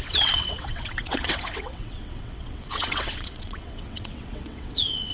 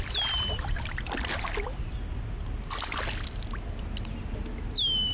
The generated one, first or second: first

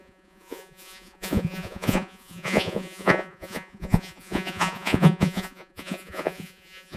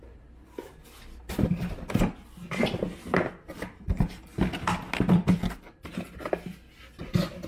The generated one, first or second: first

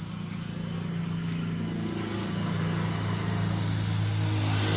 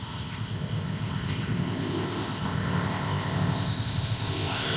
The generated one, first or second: second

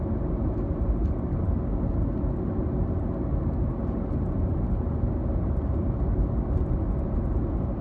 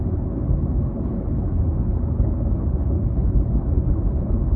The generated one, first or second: second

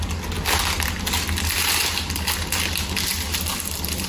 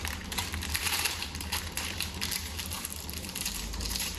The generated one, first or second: second